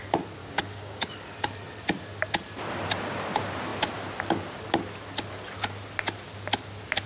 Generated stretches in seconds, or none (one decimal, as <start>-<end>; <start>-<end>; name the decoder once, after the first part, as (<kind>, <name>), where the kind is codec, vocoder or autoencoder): 0.4-1.1 (codec, DAC)